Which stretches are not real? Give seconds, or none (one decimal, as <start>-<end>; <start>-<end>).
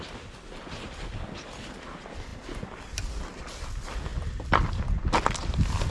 none